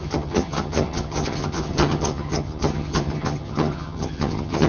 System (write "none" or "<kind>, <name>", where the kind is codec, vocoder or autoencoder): vocoder, HiFi-GAN